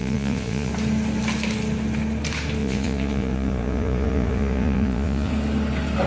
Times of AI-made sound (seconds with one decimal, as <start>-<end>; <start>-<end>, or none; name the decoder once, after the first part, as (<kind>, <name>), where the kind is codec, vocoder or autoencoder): 0.0-0.7 (vocoder, Vocos); 2.6-5.3